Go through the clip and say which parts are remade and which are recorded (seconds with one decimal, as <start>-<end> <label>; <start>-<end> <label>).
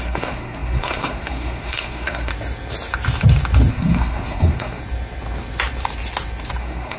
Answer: 0.0-2.3 remade; 2.3-3.7 recorded; 3.7-4.8 remade; 4.8-6.6 recorded; 6.6-7.0 remade